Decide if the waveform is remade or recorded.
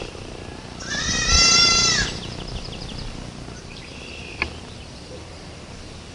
remade